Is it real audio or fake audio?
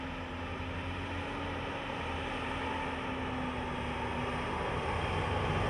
real